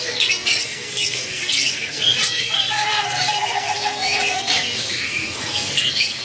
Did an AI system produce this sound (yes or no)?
yes